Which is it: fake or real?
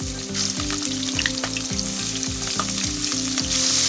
real